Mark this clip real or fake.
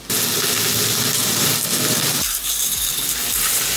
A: real